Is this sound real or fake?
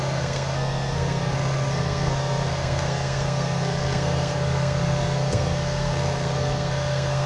fake